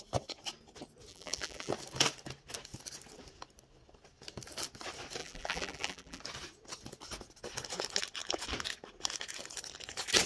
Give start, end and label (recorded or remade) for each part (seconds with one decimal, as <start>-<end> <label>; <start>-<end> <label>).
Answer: 0.0-1.1 recorded; 1.1-1.7 remade; 1.7-5.2 recorded; 5.2-6.2 remade; 6.2-10.3 recorded